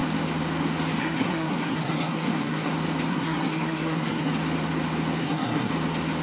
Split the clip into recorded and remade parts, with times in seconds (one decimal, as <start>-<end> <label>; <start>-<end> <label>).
0.0-1.0 recorded; 1.0-2.7 remade; 2.7-3.1 recorded; 3.1-4.3 remade; 4.3-5.2 recorded; 5.2-5.7 remade; 5.7-6.2 recorded